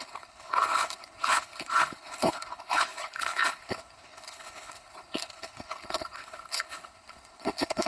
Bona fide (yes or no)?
no